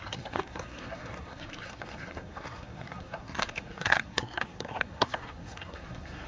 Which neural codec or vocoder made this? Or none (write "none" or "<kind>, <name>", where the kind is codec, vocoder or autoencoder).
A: codec, SNAC